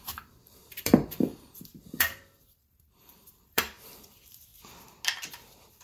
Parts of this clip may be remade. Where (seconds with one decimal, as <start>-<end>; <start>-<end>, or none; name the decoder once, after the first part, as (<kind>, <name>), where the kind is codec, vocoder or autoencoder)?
0.0-4.5 (vocoder, BigVGAN v2)